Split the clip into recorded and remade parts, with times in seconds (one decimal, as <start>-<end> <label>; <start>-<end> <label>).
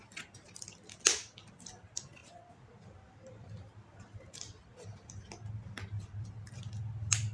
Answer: 0.0-7.3 recorded